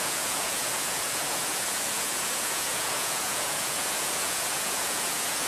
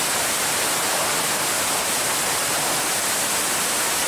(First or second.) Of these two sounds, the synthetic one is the first